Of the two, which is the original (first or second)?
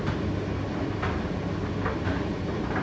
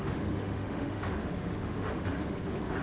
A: first